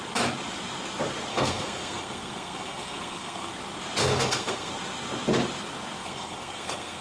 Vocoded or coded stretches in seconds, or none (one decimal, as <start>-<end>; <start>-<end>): 1.3-3.5; 4.0-4.7; 6.0-7.0

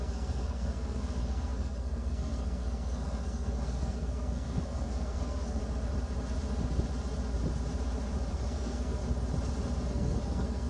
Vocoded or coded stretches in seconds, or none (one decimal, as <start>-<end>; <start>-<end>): 0.0-5.6; 8.3-9.0; 9.9-10.7

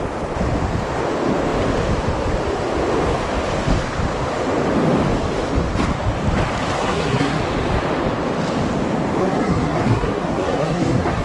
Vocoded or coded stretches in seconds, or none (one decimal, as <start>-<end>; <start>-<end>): 6.8-7.4; 9.2-11.2

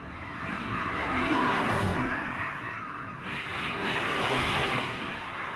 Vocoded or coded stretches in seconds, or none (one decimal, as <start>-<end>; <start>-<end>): 0.0-5.6

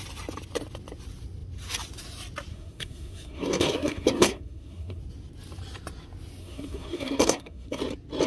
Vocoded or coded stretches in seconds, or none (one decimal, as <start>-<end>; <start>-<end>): 2.5-5.0; 6.4-7.8

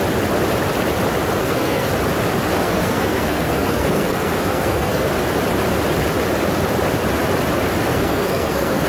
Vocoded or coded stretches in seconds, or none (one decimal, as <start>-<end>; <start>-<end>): 1.4-1.9; 2.5-5.1; 7.9-8.9

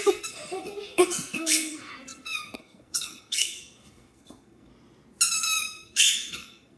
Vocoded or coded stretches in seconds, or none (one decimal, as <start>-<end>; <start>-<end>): 0.0-4.7; 5.3-6.8

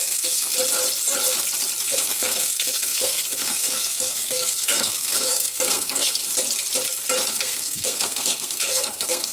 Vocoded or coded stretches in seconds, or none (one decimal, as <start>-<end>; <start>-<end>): 0.0-0.5; 1.8-6.2; 7.3-9.3